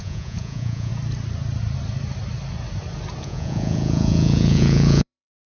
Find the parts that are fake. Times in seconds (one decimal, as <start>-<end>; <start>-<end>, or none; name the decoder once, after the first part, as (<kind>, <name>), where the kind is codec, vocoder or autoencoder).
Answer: 0.0-0.9 (vocoder, Vocos); 3.2-5.5